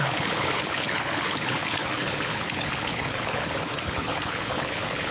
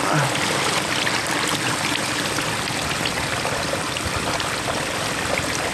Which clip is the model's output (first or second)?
first